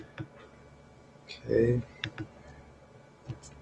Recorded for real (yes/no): yes